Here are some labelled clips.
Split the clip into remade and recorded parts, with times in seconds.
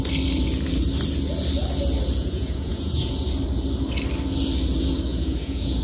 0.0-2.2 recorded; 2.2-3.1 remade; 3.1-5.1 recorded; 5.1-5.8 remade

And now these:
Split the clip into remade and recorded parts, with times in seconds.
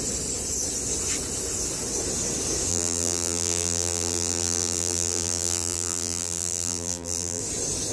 0.0-2.7 recorded; 2.7-7.4 remade; 7.4-7.9 recorded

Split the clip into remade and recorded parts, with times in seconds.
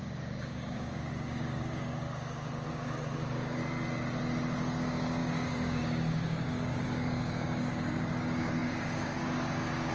0.0-3.6 remade; 3.6-4.8 recorded; 4.8-9.9 remade